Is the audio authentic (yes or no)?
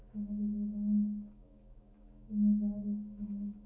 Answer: no